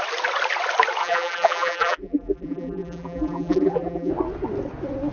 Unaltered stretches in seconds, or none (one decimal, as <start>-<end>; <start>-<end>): 0.0-1.0; 4.1-5.1